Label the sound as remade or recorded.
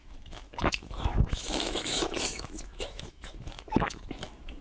remade